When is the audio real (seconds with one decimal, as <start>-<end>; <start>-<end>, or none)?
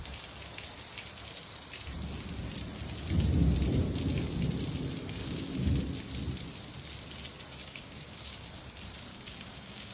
0.0-5.2; 5.7-7.6; 8.5-9.1